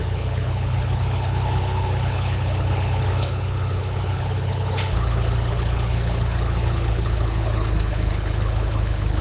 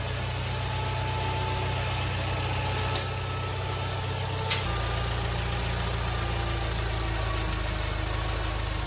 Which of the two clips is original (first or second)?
second